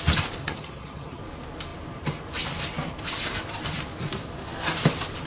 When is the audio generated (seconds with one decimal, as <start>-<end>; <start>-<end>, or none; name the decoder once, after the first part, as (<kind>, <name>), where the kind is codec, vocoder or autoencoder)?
0.4-1.2 (vocoder, HiFi-GAN)